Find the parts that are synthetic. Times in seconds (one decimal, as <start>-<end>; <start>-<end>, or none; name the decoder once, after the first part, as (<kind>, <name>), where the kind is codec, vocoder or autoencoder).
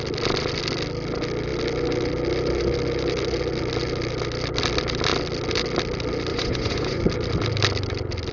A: 6.3-7.0 (vocoder, Vocos)